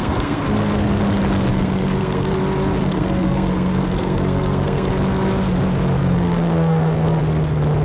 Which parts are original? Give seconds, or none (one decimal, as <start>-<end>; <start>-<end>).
1.0-1.5; 2.4-2.8; 4.9-6.0; 7.2-7.8